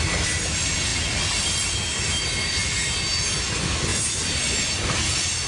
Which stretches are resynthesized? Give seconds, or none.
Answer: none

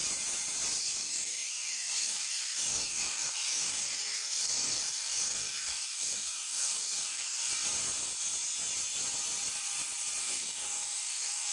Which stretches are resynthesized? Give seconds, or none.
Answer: 0.8-7.5 (codec, DAC); 10.2-11.5